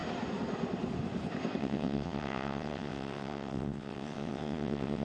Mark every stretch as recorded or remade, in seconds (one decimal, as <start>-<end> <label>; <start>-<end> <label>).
0.0-1.6 recorded; 1.6-5.0 remade